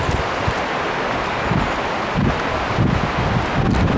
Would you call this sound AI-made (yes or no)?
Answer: no